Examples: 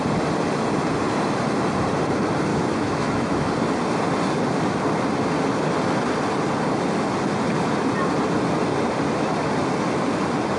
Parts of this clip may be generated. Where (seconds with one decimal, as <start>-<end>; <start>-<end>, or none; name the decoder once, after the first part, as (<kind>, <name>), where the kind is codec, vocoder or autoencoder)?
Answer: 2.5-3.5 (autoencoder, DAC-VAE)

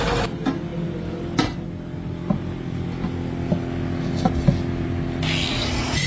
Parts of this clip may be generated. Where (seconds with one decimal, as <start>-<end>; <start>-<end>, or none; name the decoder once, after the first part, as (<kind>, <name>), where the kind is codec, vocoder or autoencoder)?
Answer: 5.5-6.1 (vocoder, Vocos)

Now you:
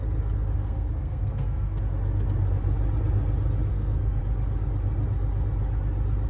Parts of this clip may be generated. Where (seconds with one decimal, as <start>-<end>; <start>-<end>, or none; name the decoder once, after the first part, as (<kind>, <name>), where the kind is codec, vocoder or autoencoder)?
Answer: 0.6-1.8 (codec, SNAC); 3.7-4.2

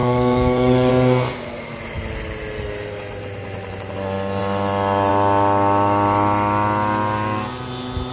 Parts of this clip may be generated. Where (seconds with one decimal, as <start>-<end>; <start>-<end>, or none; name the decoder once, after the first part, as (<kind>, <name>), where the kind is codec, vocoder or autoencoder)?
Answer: 0.0-0.9 (codec, DAC)

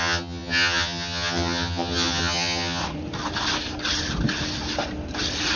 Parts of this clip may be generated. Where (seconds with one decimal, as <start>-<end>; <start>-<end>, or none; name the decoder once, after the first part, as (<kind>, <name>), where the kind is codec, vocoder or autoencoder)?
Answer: 0.0-2.8 (vocoder, HiFi-GAN)